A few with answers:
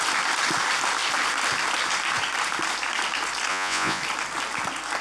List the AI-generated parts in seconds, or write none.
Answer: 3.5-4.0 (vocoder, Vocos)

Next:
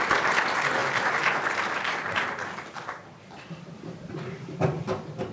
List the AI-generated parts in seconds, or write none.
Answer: 0.0-0.8 (vocoder, BigVGAN v2); 3.6-5.3

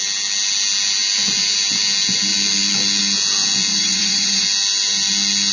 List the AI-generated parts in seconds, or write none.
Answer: 3.7-4.4 (vocoder, Vocos)

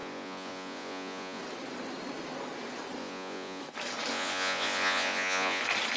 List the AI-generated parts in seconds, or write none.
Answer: 0.0-1.4 (vocoder, Vocos); 3.0-3.6; 4.1-5.6

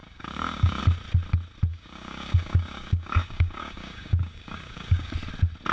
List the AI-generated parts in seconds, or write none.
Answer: 0.0-0.8 (codec, DAC); 1.7-5.1

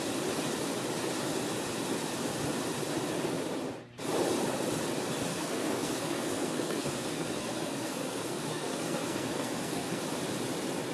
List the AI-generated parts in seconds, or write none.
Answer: 5.3-10.0 (codec, SNAC)

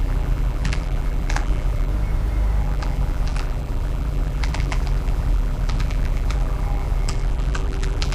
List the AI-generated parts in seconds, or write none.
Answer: 0.0-1.9 (vocoder, BigVGAN v2); 2.6-8.1